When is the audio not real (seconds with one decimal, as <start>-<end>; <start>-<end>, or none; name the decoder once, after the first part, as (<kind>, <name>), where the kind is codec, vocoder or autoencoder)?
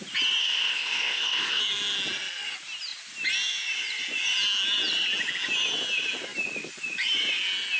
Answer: 0.4-1.6 (codec, ZipCodec)